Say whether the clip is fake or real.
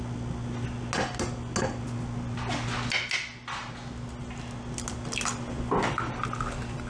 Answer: real